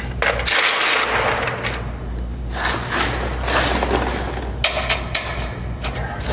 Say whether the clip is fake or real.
real